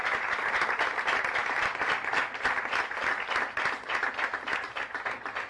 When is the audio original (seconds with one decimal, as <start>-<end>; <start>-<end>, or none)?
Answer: 0.0-5.5